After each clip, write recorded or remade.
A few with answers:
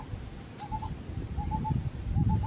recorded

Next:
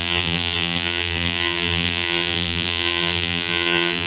remade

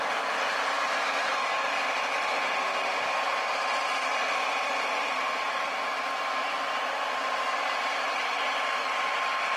recorded